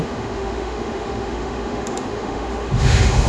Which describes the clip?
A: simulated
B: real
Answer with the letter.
A